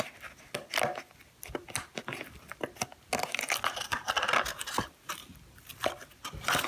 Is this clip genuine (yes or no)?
yes